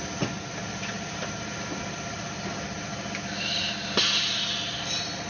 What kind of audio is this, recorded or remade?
recorded